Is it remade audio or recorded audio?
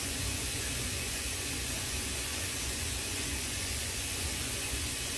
remade